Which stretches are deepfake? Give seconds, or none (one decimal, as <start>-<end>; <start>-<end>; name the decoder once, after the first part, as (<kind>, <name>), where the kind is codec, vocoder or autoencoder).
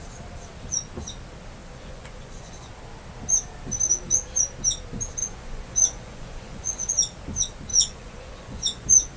1.6-2.7 (vocoder, Vocos); 5.2-6.9; 7.7-9.2